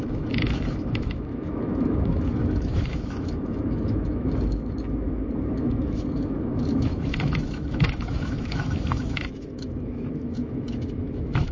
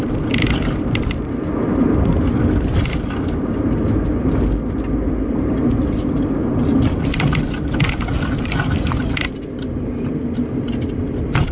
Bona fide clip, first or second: second